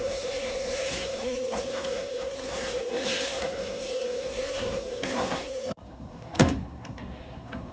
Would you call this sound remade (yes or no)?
yes